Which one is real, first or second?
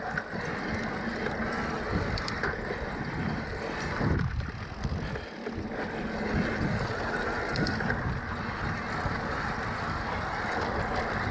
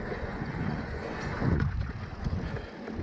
first